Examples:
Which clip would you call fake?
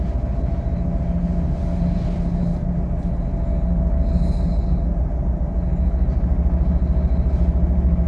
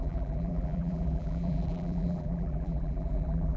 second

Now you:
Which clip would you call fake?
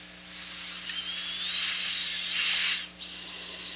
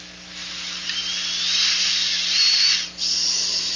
second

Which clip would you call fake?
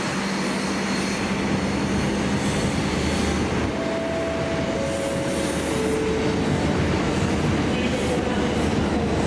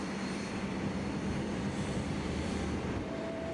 second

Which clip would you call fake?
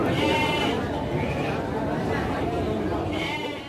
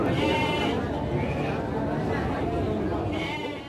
first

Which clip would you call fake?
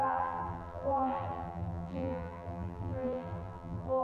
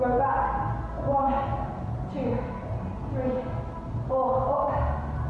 first